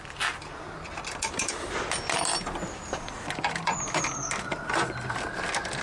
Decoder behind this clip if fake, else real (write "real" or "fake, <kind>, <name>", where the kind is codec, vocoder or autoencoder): real